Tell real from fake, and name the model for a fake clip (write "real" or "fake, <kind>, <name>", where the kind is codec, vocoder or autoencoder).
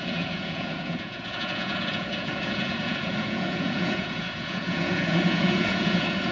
fake, vocoder, Vocos